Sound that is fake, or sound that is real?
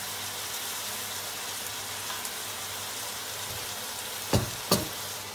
real